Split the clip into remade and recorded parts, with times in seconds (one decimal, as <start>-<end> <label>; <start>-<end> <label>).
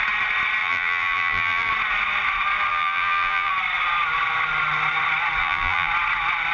0.0-0.6 recorded; 0.6-1.7 remade; 1.7-2.7 recorded; 2.7-3.5 remade; 3.5-5.4 recorded; 5.4-5.9 remade; 5.9-6.5 recorded